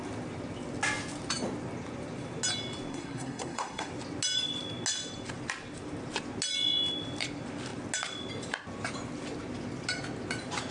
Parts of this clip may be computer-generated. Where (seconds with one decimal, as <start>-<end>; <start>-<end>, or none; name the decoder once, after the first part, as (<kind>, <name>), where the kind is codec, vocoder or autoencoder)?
2.9-3.9 (codec, SNAC)